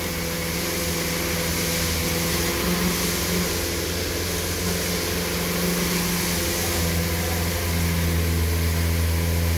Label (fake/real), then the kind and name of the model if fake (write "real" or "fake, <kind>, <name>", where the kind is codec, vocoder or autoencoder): real